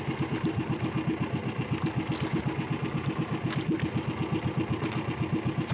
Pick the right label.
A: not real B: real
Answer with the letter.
B